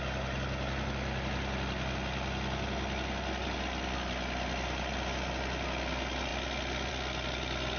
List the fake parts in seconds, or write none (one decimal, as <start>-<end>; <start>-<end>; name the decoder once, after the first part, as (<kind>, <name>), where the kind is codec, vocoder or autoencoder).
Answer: none